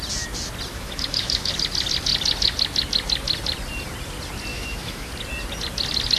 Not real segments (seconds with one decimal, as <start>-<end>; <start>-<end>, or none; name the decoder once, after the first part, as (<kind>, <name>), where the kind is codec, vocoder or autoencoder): 0.7-1.5 (autoencoder, DAC-VAE); 4.5-5.1